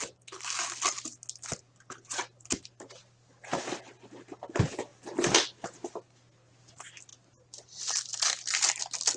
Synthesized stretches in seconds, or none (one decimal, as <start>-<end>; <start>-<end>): none